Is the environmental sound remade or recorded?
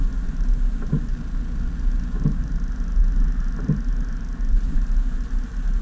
recorded